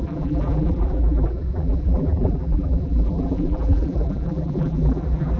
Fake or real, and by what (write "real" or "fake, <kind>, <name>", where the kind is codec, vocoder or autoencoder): fake, vocoder, BigVGAN v2